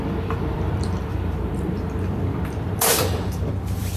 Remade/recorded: remade